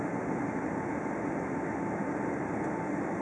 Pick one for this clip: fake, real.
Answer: real